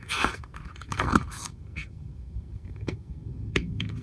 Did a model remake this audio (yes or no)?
yes